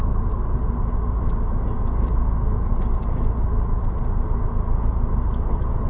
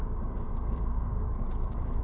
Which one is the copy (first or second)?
second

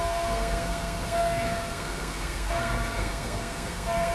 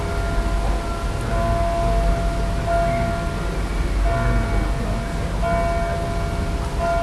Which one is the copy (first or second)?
first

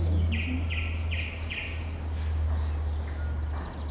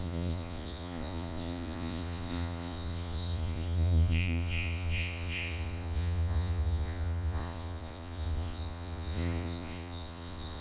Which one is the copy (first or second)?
second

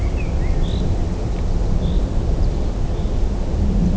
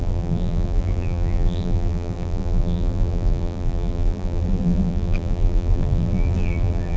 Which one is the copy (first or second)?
second